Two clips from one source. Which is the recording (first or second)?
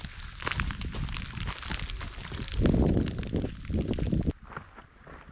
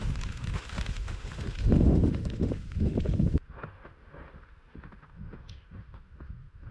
first